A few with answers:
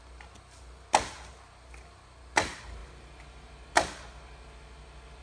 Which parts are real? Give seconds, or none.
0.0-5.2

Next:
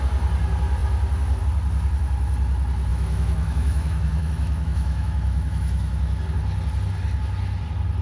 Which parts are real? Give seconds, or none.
0.0-2.9; 6.2-8.0

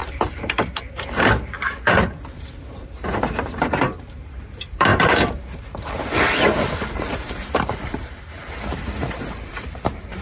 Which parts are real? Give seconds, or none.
none

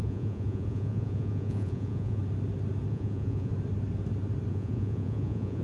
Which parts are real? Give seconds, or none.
2.2-2.9; 3.5-4.5